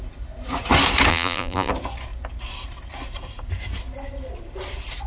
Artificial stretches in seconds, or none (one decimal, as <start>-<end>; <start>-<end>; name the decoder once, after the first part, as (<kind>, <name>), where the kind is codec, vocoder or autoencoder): 1.1-1.7 (vocoder, BigVGAN v2)